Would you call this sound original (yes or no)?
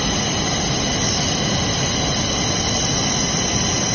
yes